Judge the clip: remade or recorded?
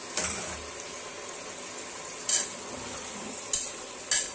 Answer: recorded